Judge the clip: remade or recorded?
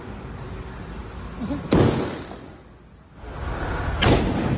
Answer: recorded